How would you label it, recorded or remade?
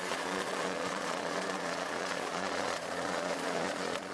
remade